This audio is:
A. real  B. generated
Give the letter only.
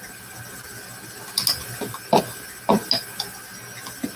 A